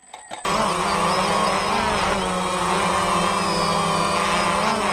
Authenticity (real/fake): real